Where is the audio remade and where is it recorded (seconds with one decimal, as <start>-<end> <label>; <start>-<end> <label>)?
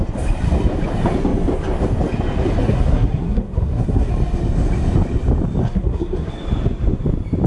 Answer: 0.0-2.6 recorded; 2.6-4.1 remade; 4.1-5.6 recorded; 5.6-6.3 remade; 6.3-7.5 recorded